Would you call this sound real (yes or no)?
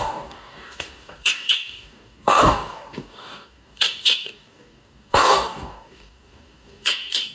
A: no